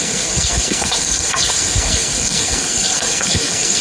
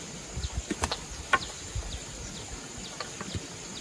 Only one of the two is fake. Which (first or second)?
first